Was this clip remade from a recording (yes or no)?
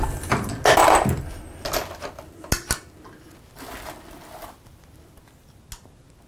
no